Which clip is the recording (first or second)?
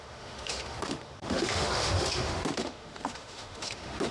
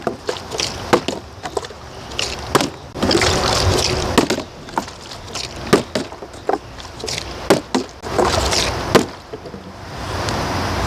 second